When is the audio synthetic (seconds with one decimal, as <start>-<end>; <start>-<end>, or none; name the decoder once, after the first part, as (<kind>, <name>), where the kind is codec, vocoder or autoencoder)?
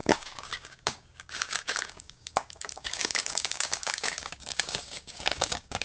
0.0-5.8 (codec, DAC)